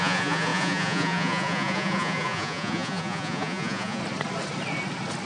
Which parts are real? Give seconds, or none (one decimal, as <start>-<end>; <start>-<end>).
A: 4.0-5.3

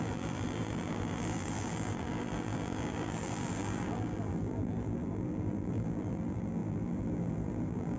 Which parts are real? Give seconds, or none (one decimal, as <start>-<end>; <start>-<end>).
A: none

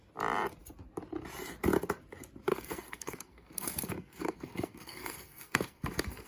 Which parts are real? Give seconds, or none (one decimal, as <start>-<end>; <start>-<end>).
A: 0.0-2.5